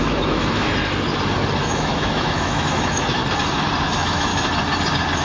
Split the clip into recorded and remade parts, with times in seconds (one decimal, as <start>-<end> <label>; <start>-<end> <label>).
0.0-0.7 remade; 0.7-1.6 recorded; 1.6-3.2 remade; 3.2-3.8 recorded; 3.8-4.3 remade; 4.3-5.2 recorded